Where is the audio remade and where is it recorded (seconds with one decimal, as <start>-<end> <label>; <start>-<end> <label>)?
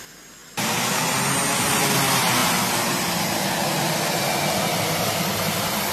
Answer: 0.0-5.9 recorded